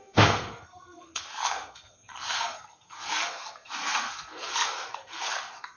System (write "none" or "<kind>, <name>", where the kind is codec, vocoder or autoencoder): codec, SNAC